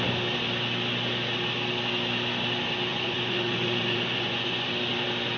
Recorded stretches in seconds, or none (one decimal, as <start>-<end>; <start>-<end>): 0.0-2.9; 4.7-5.4